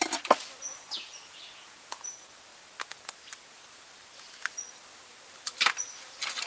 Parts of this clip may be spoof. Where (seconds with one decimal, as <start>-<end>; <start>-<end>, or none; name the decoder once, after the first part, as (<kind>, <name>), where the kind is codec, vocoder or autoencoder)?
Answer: 0.7-2.0 (vocoder, Vocos)